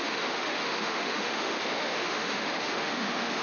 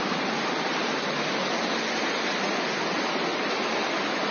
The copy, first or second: first